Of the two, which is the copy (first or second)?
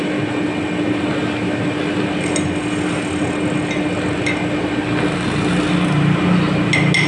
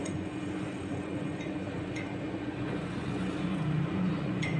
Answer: second